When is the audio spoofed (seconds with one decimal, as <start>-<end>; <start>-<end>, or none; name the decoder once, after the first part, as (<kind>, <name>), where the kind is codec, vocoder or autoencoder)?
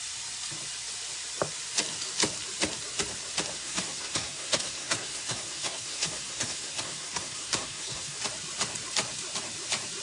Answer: 3.5-8.2 (codec, SNAC)